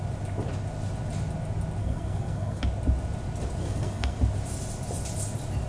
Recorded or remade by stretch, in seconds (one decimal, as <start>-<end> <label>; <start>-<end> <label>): 0.0-1.8 recorded; 1.8-2.6 remade; 2.6-3.6 recorded; 3.6-4.2 remade; 4.2-5.7 recorded